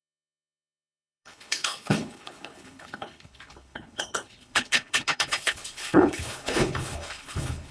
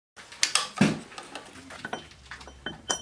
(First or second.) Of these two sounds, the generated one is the first